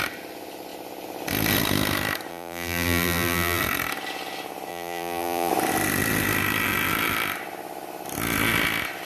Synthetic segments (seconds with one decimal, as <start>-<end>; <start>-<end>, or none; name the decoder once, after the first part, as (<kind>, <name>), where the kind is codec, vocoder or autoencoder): 2.3-3.6 (vocoder, BigVGAN v2); 4.7-5.5